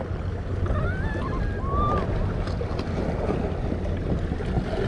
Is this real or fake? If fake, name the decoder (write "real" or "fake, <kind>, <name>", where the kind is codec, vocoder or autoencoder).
real